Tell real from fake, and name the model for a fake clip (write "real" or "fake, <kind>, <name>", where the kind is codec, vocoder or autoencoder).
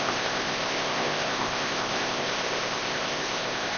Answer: fake, codec, ZipCodec